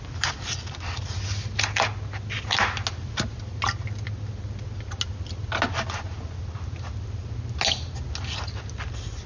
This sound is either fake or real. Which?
real